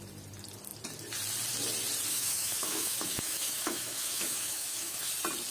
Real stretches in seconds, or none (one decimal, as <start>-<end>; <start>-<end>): 0.0-2.1; 5.1-5.5